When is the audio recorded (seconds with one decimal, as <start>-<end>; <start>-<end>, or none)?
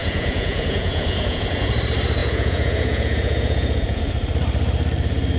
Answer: 1.7-2.2; 4.0-5.4